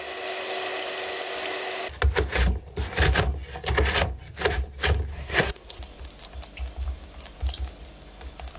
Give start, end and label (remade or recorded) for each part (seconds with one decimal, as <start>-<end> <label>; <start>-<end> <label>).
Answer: 0.0-5.1 recorded; 5.1-5.8 remade; 5.8-8.6 recorded